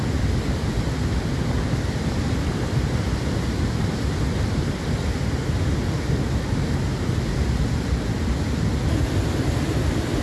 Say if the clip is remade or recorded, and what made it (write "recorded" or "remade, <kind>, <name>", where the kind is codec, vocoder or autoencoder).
recorded